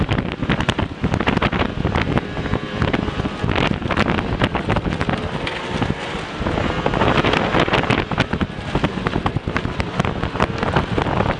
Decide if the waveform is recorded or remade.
recorded